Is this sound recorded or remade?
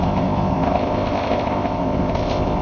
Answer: remade